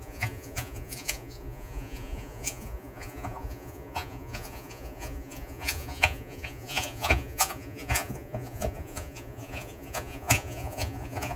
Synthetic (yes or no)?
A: yes